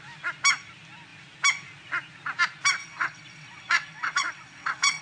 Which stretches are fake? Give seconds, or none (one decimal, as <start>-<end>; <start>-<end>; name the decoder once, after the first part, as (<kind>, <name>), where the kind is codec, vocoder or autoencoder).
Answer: 2.8-5.0 (vocoder, WaveNeXt)